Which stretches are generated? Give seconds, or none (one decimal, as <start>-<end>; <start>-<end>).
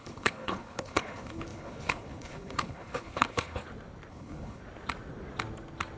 0.0-3.6; 4.1-4.6